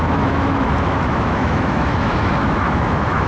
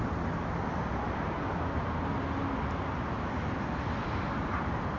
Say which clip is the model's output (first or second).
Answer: first